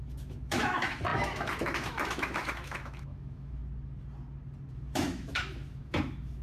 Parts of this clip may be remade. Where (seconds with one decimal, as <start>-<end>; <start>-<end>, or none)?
0.0-3.6; 4.7-6.4